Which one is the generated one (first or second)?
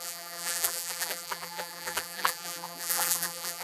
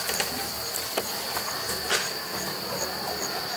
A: first